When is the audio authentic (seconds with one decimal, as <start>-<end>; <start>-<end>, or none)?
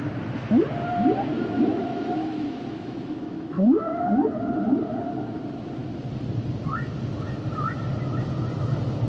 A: 0.0-1.3; 4.1-9.1